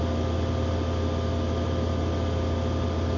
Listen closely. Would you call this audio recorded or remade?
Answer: recorded